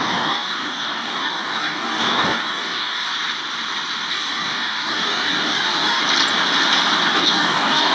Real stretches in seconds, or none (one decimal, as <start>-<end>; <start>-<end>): 3.1-4.1; 6.0-7.1